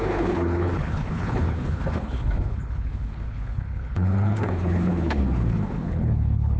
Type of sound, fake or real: fake